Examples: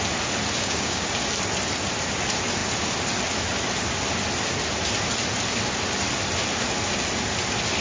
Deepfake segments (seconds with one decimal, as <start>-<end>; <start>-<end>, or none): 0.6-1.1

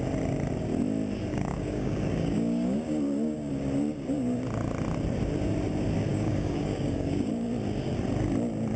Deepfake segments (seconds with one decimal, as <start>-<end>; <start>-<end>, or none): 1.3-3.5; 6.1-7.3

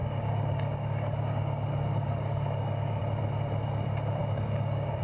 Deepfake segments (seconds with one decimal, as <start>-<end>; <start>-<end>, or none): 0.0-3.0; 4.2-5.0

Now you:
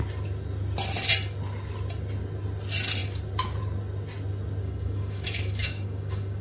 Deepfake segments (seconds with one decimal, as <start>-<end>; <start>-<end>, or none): 4.6-6.4